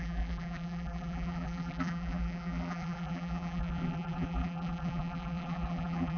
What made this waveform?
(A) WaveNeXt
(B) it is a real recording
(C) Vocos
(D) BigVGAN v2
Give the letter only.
D